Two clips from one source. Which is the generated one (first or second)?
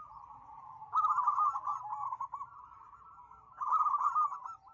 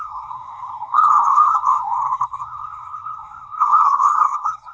second